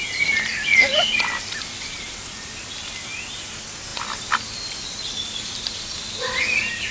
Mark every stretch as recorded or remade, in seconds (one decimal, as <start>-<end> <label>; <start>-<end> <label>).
0.0-0.8 recorded; 0.8-3.1 remade; 3.1-3.9 recorded; 3.9-6.4 remade; 6.4-6.9 recorded

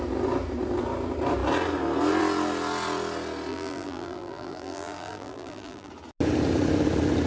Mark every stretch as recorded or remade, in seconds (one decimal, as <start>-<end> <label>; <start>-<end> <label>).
0.0-3.5 recorded; 3.5-5.9 remade; 5.9-7.3 recorded